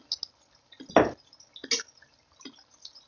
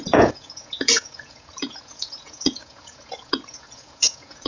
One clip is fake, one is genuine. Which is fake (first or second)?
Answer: second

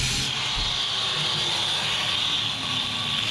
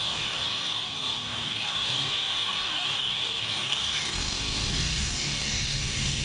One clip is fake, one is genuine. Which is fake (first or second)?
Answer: second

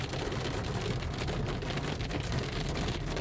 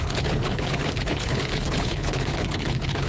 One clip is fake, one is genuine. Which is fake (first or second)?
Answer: second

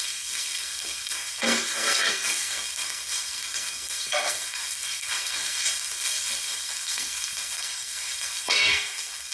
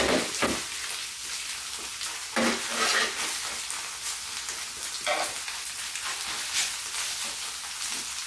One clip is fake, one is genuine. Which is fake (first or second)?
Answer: first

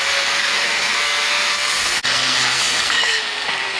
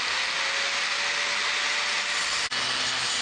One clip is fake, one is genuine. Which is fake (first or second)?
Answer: first